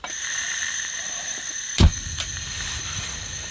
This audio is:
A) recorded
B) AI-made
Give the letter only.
B